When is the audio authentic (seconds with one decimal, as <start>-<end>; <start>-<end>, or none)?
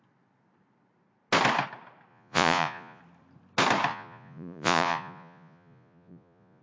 0.0-2.1; 3.0-3.9